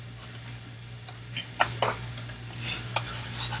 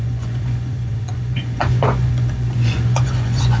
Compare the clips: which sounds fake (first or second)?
second